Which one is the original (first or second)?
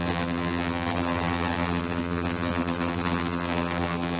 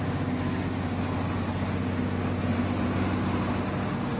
second